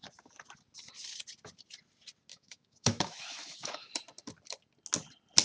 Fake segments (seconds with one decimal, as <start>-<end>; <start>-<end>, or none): 2.3-3.9